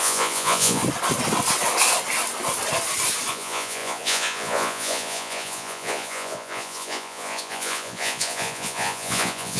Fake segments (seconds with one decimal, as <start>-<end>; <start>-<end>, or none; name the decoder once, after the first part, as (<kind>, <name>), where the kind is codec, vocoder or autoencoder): 0.0-0.8 (vocoder, Vocos); 3.3-9.6